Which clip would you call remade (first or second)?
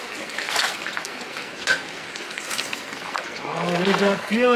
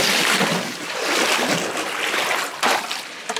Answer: first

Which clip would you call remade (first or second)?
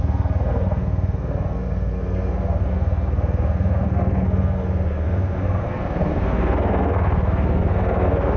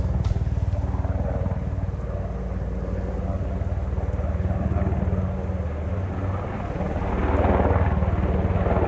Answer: first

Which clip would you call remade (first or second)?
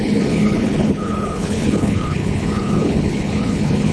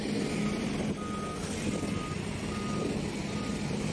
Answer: first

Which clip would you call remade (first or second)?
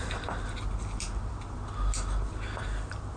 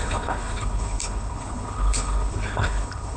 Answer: second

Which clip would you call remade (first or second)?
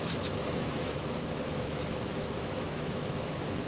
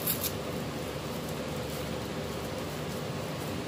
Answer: first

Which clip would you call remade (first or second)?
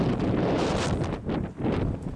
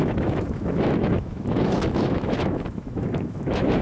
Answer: second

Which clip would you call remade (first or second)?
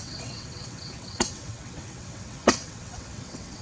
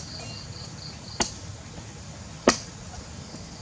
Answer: first